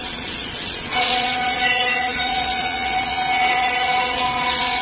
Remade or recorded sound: remade